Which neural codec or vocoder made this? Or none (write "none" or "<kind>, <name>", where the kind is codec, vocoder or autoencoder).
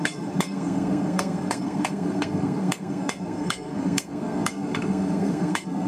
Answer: codec, SNAC